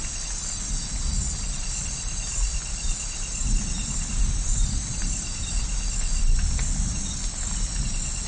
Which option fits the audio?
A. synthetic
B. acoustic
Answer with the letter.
B